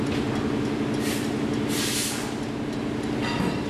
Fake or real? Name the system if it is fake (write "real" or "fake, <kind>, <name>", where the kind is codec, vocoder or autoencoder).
real